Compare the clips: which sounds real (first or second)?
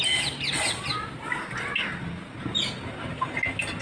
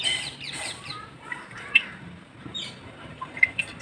first